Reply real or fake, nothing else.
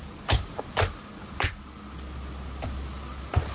real